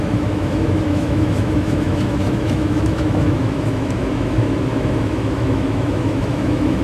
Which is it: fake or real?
fake